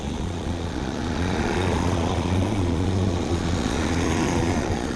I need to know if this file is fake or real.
fake